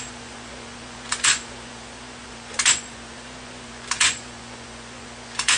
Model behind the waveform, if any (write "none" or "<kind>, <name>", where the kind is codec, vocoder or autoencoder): vocoder, Vocos